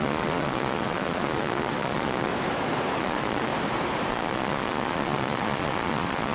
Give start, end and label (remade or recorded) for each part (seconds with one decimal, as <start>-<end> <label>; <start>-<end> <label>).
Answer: 0.0-2.3 remade; 2.3-3.0 recorded; 3.0-3.5 remade; 3.5-4.1 recorded; 4.1-6.3 remade